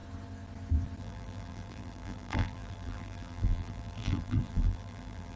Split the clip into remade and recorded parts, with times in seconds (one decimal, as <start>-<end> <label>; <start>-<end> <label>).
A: 0.0-1.0 recorded; 1.0-5.4 remade